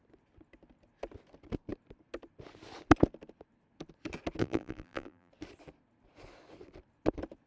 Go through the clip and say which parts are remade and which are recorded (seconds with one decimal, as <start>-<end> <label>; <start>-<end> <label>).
0.0-4.4 recorded; 4.4-5.3 remade; 5.3-7.5 recorded